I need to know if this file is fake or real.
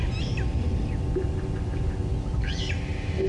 real